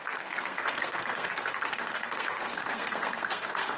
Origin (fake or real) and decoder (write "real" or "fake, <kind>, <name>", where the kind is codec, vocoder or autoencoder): fake, codec, SNAC